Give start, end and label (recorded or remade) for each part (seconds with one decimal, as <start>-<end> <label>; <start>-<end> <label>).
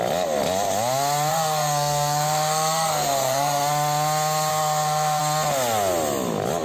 0.0-1.3 recorded; 1.3-3.6 remade; 3.6-4.5 recorded; 4.5-5.2 remade; 5.2-6.6 recorded